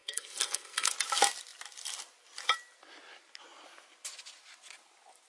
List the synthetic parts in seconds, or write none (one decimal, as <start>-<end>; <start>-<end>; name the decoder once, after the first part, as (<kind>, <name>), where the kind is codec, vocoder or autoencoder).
0.0-0.9 (codec, SNAC)